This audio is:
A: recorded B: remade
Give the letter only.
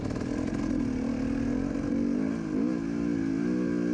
A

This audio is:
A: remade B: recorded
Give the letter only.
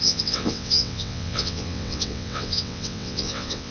A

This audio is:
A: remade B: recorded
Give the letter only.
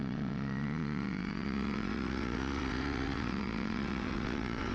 A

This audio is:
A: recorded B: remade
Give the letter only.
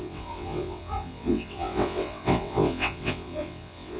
B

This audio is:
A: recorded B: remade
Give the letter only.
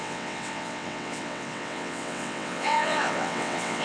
B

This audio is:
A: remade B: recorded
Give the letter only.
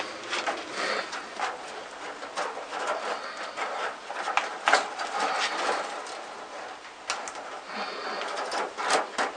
B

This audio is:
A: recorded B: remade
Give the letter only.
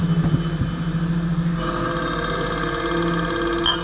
A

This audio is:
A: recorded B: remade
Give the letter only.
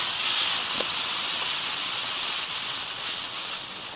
B